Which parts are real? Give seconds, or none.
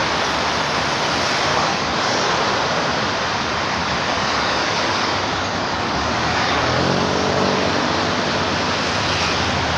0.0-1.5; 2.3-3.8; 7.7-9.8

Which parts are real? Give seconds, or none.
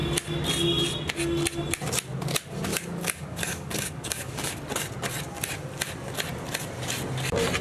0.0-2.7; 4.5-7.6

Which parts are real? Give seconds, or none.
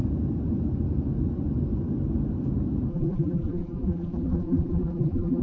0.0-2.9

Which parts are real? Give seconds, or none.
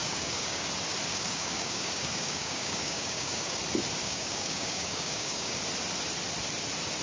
0.7-1.1; 3.6-4.0; 5.6-7.0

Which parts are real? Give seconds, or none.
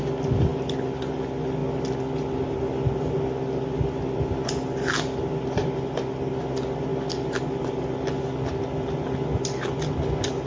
0.0-6.9; 8.2-10.5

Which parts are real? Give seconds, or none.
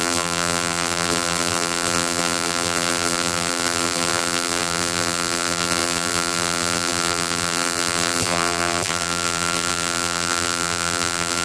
none